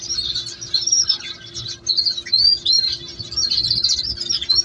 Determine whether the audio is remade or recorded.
recorded